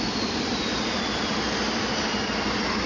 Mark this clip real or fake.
fake